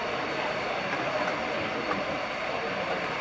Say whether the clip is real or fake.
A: fake